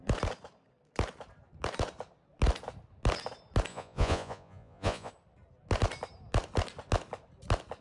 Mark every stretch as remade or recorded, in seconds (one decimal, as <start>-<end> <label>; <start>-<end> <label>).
0.0-3.7 recorded; 3.7-5.1 remade; 5.1-7.8 recorded